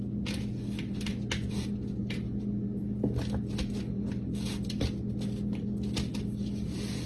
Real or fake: real